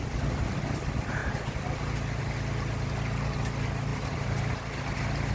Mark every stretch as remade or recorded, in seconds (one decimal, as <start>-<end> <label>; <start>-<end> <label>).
0.0-5.3 recorded